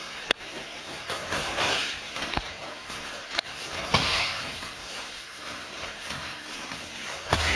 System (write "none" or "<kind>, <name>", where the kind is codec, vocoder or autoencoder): codec, SNAC